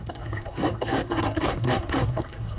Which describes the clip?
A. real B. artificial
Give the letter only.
B